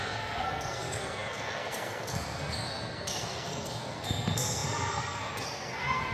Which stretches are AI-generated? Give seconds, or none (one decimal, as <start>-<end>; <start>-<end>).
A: 0.0-6.1